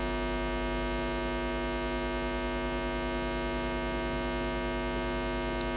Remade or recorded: recorded